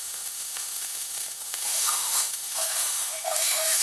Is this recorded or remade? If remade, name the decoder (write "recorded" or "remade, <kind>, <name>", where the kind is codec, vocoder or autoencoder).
remade, autoencoder, DAC-VAE